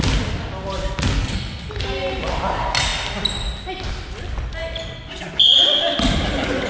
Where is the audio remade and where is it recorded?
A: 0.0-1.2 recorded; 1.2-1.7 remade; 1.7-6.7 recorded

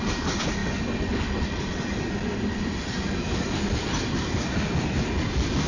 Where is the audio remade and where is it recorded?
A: 0.0-5.7 recorded